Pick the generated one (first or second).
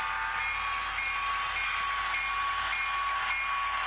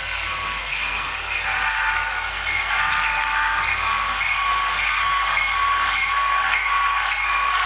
second